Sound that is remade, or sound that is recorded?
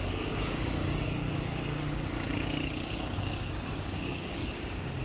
remade